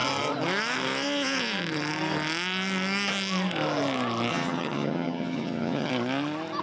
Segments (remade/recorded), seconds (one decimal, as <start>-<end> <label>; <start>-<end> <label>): 0.0-4.3 recorded; 4.3-5.9 remade; 5.9-6.6 recorded